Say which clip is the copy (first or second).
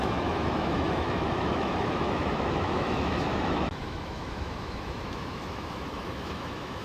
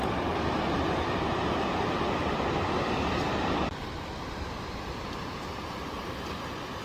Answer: first